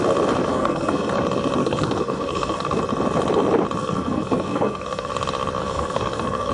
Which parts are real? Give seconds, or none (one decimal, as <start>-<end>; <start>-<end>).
0.0-0.5; 1.1-1.6; 2.8-3.8; 5.1-5.6